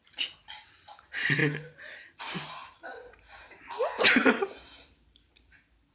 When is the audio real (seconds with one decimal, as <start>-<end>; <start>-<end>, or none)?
0.0-5.9

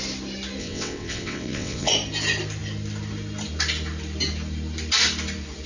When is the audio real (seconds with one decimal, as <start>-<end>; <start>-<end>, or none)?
0.0-0.6; 1.9-5.7

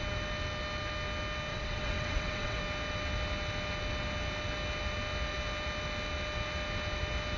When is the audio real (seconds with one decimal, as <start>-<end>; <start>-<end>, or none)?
0.0-1.5; 2.6-7.4

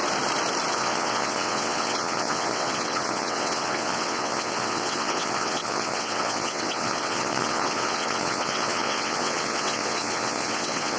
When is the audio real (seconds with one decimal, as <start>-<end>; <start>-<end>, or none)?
0.0-0.7

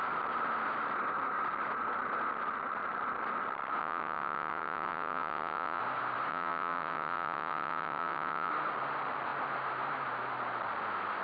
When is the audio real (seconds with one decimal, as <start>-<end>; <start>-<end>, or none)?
0.0-3.8; 5.8-6.3; 8.5-11.2

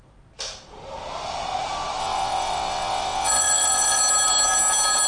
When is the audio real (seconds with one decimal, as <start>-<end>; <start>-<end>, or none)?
0.0-2.0; 4.0-5.1

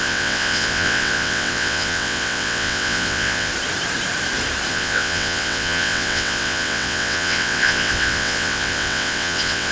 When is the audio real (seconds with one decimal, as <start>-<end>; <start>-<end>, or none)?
3.5-4.7

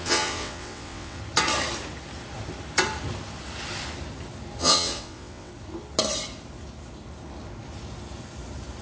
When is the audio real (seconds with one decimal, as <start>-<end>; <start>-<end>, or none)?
1.2-4.6; 5.5-8.8